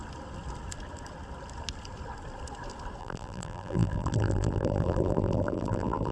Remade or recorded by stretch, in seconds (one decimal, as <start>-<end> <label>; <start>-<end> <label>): 0.0-3.0 recorded; 3.0-6.1 remade